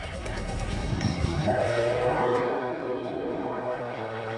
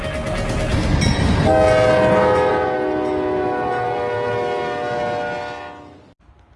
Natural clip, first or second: second